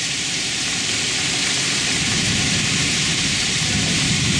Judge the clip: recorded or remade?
remade